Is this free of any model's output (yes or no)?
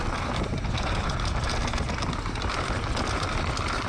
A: yes